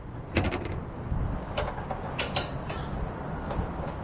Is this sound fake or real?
real